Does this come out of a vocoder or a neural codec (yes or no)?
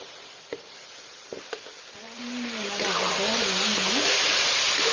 yes